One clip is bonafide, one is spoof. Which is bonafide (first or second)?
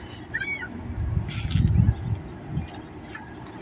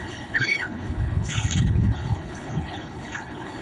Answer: first